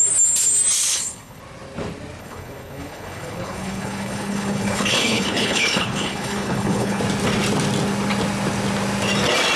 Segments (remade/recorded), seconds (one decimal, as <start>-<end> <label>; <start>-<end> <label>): 0.0-0.9 recorded; 0.9-1.4 remade; 1.4-2.2 recorded; 2.2-7.0 remade; 7.0-9.6 recorded